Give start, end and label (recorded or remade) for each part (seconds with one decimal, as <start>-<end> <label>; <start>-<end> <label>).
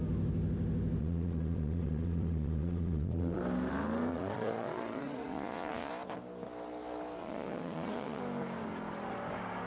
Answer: 0.0-1.0 recorded; 1.0-3.4 remade; 3.4-4.1 recorded; 4.1-5.9 remade; 5.9-7.2 recorded; 7.2-8.2 remade; 8.2-9.7 recorded